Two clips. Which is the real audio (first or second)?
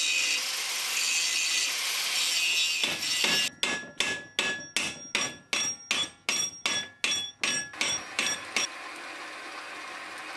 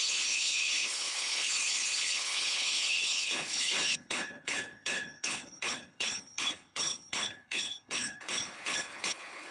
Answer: first